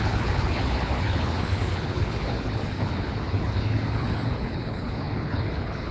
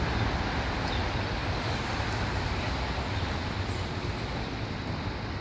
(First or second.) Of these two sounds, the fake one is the first